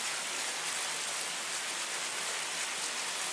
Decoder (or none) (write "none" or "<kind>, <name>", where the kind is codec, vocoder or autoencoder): none